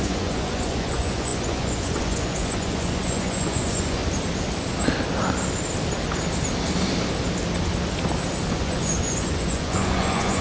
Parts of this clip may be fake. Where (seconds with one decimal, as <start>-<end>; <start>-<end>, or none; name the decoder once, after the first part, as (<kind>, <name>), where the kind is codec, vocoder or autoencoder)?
0.0-4.0 (vocoder, Vocos); 8.5-10.4